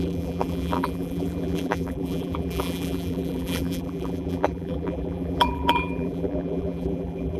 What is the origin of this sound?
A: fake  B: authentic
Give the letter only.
A